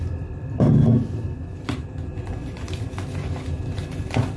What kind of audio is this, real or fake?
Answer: fake